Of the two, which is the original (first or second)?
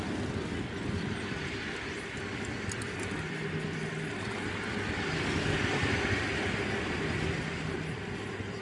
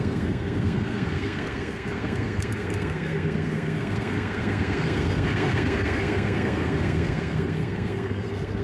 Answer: first